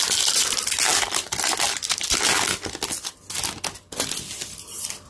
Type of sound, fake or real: real